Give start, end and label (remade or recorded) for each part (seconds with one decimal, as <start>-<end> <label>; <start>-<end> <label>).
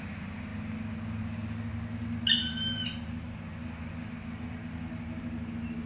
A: 0.0-5.9 recorded